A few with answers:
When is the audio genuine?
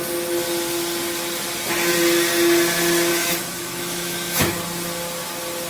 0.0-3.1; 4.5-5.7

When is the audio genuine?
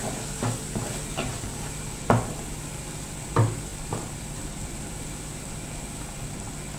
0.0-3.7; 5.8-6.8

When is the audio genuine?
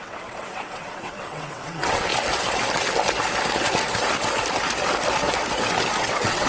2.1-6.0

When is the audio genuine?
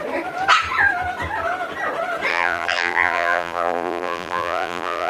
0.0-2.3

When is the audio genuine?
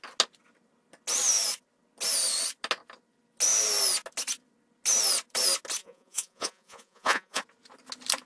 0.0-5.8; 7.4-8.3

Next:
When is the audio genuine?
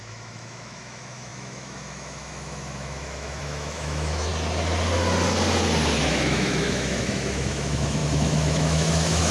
4.3-6.1